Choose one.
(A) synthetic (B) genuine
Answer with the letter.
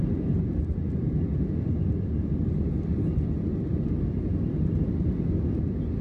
B